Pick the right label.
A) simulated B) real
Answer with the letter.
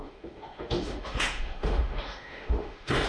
A